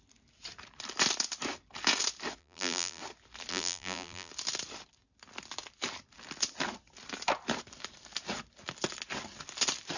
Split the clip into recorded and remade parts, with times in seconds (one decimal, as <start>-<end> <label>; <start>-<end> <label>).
0.0-2.4 recorded; 2.4-3.0 remade; 3.0-3.5 recorded; 3.5-4.3 remade; 4.3-10.0 recorded